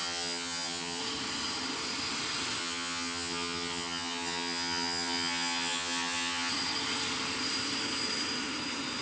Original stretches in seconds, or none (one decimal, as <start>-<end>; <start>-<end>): 1.0-2.6; 6.5-9.0